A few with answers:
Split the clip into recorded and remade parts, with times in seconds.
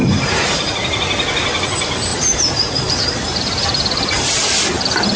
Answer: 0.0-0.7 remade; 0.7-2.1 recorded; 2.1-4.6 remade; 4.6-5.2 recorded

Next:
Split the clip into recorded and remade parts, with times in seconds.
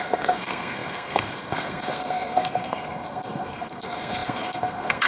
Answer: 0.0-5.1 remade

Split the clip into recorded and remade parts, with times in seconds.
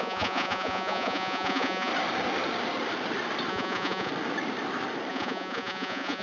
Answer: 0.0-1.9 remade; 1.9-3.5 recorded; 3.5-4.1 remade; 4.1-5.1 recorded; 5.1-6.2 remade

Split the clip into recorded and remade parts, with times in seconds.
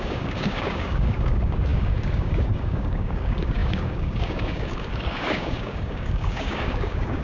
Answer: 0.0-7.2 remade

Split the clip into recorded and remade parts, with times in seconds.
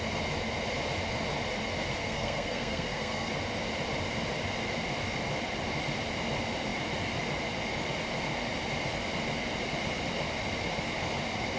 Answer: 0.0-2.0 recorded; 2.0-3.3 remade; 3.3-11.6 recorded